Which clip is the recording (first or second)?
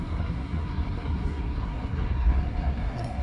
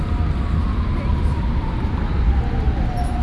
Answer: second